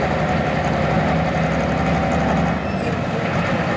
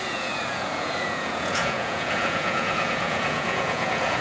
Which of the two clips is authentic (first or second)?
first